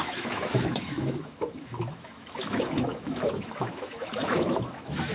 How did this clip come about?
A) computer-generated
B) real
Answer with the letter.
A